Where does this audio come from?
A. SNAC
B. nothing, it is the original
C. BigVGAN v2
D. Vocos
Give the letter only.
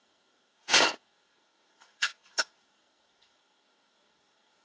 A